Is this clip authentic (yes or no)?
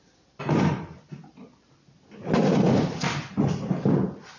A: no